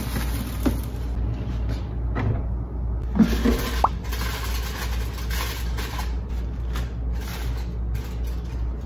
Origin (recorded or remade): recorded